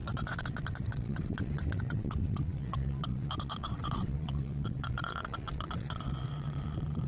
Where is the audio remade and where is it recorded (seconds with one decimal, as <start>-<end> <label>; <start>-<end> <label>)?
0.0-7.1 remade